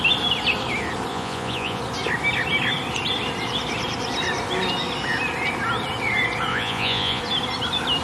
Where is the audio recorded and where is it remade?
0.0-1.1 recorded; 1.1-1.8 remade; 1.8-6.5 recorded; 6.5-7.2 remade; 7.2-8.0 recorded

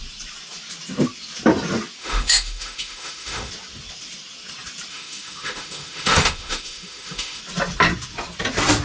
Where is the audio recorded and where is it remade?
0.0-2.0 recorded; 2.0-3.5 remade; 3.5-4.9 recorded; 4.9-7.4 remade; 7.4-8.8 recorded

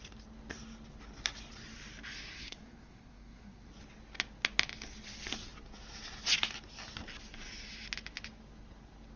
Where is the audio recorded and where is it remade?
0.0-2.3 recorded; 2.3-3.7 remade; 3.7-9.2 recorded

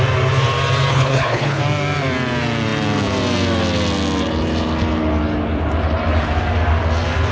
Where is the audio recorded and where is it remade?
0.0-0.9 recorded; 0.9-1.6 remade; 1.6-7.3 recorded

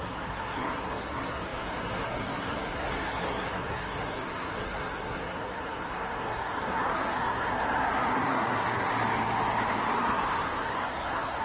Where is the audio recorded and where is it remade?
0.0-8.9 remade; 8.9-10.0 recorded; 10.0-11.4 remade

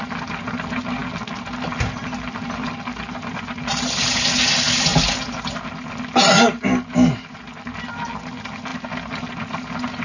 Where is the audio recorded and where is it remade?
0.0-10.0 recorded

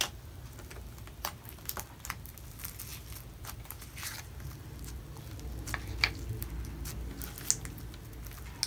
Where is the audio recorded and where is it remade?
0.0-8.7 recorded

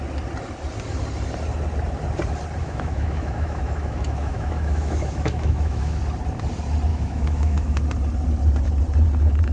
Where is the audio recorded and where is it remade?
0.0-2.6 recorded; 2.6-6.0 remade; 6.0-6.9 recorded; 6.9-7.8 remade; 7.8-9.5 recorded